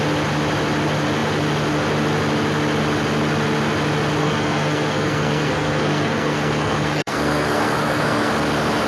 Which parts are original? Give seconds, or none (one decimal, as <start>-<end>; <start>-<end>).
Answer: 0.0-4.2; 8.3-8.9